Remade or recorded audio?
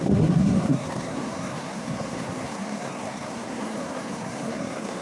remade